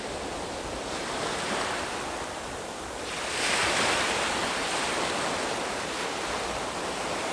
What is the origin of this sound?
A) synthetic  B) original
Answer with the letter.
B